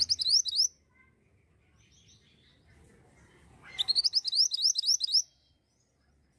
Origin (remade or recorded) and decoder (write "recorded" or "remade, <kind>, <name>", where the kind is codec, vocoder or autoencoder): recorded